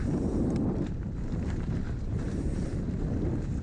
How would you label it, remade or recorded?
remade